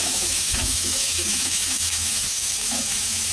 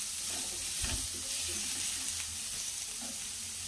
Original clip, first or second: second